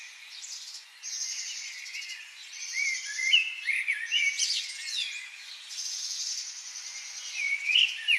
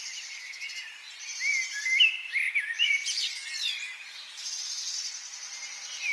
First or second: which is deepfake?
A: first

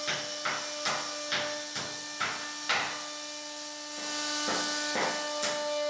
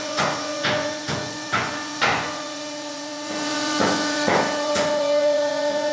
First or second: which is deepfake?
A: second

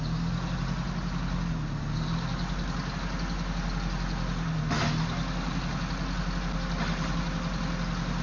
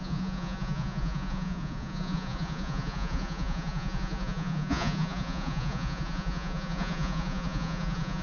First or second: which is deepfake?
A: second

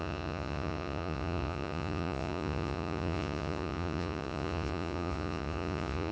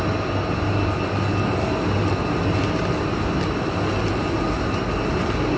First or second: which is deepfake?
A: first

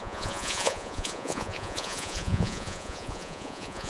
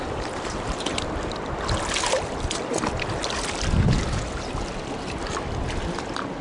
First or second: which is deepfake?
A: first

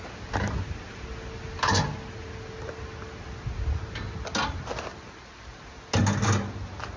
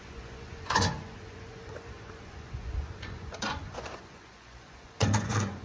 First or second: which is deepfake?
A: second